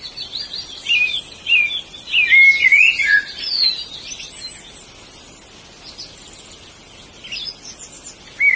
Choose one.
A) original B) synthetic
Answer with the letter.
A